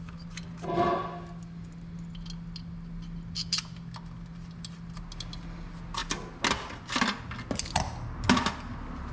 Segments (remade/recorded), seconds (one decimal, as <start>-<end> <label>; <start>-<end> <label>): 0.0-9.1 recorded